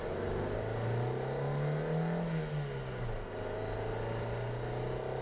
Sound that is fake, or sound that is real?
real